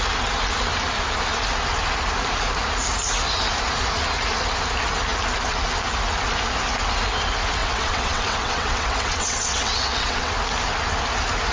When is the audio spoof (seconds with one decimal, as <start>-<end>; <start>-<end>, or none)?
7.6-10.3